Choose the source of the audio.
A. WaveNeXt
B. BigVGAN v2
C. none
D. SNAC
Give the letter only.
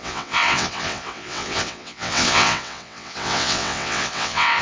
A